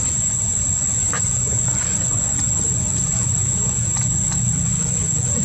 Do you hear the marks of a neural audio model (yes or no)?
yes